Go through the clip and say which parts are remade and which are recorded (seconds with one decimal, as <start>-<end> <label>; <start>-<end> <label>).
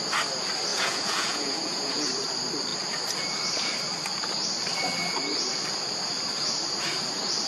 0.0-0.7 recorded; 0.7-2.1 remade; 2.1-7.5 recorded